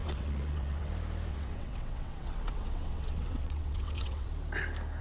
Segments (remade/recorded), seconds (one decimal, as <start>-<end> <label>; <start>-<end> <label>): 0.0-0.9 remade; 0.9-1.3 recorded; 1.3-4.3 remade; 4.3-5.0 recorded